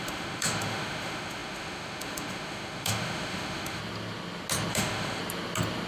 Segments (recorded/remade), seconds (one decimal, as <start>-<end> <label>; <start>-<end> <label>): 0.0-3.8 remade; 3.8-4.7 recorded; 4.7-5.2 remade; 5.2-5.9 recorded